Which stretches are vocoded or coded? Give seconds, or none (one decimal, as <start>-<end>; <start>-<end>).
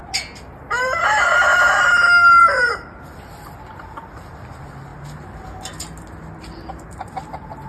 0.7-1.5; 2.4-4.9; 6.4-7.7